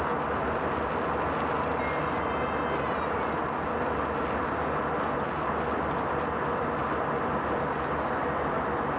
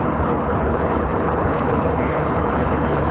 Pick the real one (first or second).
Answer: first